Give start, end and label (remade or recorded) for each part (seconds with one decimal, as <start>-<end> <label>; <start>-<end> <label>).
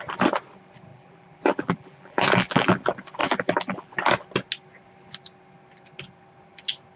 0.0-0.9 recorded; 0.9-2.8 remade; 2.8-3.2 recorded; 3.2-3.9 remade; 3.9-7.0 recorded